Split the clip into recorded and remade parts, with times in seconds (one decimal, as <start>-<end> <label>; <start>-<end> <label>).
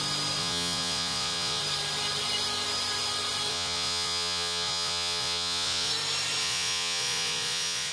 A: 0.0-0.4 recorded; 0.4-1.6 remade; 1.6-3.5 recorded; 3.5-5.9 remade; 5.9-6.4 recorded; 6.4-7.9 remade